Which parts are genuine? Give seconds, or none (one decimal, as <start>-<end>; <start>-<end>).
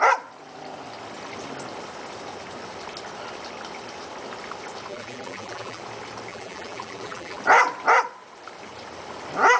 0.0-4.9; 5.8-6.3; 7.4-9.6